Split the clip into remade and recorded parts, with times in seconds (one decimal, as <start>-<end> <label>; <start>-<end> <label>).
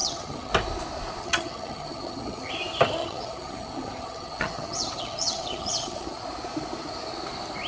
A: 0.0-0.5 remade; 0.5-1.2 recorded; 1.2-2.5 remade; 2.5-3.0 recorded; 3.0-6.2 remade; 6.2-7.7 recorded